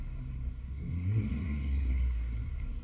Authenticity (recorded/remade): remade